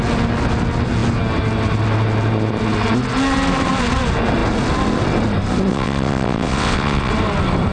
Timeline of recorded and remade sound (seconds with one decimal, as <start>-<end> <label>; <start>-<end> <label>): 0.0-5.7 recorded; 5.7-7.1 remade; 7.1-7.7 recorded